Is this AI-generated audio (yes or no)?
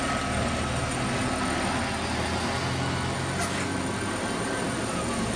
no